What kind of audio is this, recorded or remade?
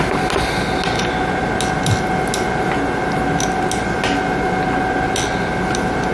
recorded